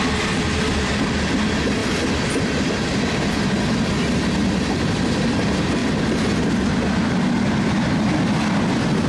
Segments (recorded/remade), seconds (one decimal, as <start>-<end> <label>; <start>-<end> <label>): 0.0-9.1 recorded